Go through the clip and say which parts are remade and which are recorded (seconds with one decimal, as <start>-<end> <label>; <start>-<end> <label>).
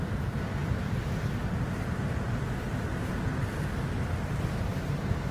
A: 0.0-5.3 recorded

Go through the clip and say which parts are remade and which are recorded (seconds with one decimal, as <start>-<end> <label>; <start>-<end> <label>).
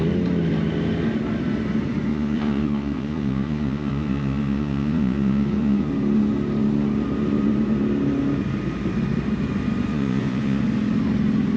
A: 0.0-2.1 recorded; 2.1-5.9 remade; 5.9-9.9 recorded; 9.9-10.6 remade; 10.6-11.6 recorded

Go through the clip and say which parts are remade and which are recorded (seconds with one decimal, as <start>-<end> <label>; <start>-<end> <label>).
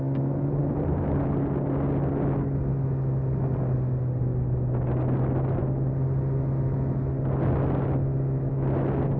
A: 0.0-9.2 recorded